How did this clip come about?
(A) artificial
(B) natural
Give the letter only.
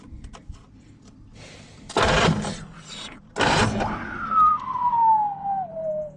B